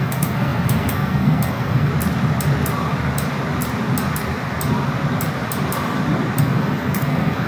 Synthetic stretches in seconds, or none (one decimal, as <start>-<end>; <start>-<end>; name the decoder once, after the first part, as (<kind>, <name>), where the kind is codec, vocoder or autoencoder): 0.0-1.9 (codec, SNAC); 6.4-7.5